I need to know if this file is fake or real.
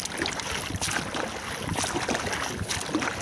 real